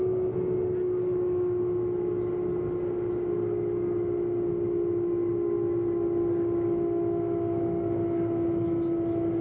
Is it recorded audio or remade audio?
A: recorded